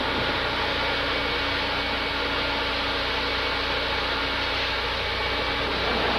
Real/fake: real